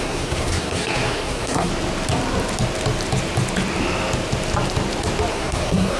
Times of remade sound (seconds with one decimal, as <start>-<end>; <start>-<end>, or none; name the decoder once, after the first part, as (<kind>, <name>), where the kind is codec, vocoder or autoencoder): 0.0-1.7 (codec, SNAC); 5.3-6.0